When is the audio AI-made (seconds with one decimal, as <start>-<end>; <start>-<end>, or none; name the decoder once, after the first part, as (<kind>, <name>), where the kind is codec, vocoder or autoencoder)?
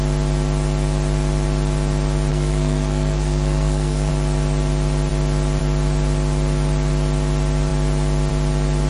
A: 2.3-4.1 (codec, SNAC)